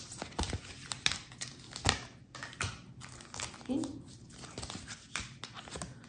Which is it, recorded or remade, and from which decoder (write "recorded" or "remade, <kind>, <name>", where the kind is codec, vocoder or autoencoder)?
recorded